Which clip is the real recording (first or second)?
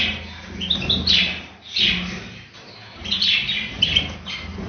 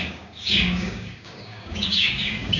first